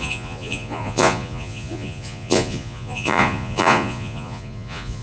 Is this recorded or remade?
remade